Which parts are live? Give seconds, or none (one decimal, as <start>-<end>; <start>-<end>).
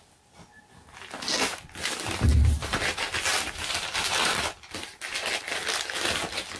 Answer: 0.0-2.3; 2.9-3.3; 5.5-6.6